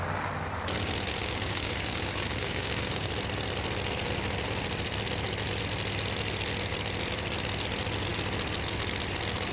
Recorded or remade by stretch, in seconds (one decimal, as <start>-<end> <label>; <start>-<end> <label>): 0.0-1.2 recorded; 1.2-3.1 remade; 3.1-9.5 recorded